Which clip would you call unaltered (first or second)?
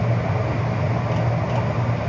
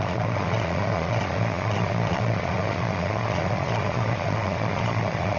first